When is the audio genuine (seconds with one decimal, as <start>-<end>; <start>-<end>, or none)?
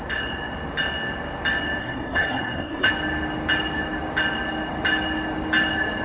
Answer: 0.0-1.8; 2.9-6.0